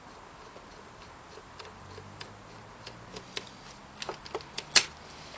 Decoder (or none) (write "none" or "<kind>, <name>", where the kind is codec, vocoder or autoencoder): none